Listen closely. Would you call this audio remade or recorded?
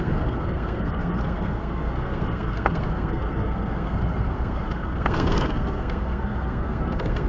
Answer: remade